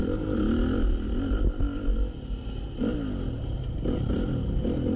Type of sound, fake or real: real